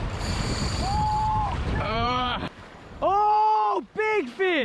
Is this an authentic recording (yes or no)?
no